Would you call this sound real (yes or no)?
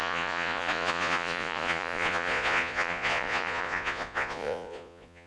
no